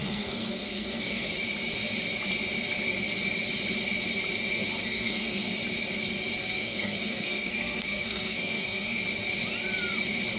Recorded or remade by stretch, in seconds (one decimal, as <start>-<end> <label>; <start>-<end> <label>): 0.0-1.3 remade; 1.3-4.9 recorded; 4.9-5.5 remade; 5.5-6.4 recorded; 6.4-9.0 remade; 9.0-10.4 recorded